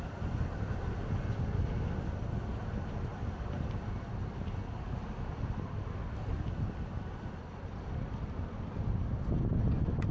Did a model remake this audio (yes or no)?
no